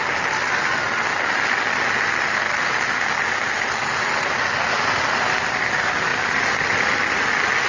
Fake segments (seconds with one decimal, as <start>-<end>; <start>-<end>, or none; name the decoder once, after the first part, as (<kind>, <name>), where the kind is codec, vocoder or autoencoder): none